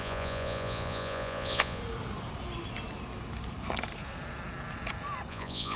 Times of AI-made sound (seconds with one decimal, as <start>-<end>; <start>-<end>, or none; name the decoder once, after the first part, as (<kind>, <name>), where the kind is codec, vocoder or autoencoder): 0.0-1.8 (vocoder, Vocos); 5.3-5.8